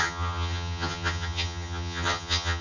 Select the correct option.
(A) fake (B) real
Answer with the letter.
A